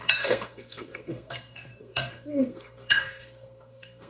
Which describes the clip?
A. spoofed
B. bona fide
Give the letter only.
A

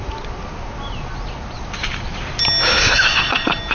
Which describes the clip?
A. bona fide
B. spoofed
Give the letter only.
A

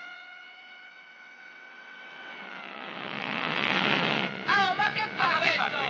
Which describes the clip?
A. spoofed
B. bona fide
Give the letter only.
A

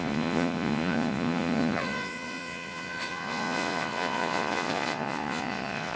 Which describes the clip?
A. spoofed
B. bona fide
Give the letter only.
A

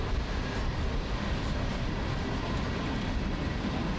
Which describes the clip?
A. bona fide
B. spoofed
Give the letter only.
A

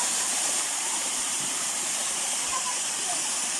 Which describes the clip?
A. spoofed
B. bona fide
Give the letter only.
A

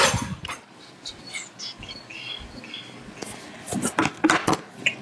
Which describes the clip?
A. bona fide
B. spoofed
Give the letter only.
A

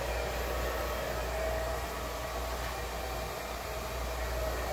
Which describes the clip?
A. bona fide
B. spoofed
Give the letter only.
A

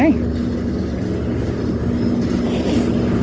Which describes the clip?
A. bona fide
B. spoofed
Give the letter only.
A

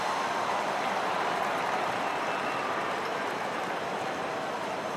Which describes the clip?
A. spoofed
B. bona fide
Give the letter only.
B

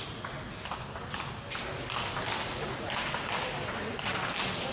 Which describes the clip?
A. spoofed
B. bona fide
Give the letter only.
B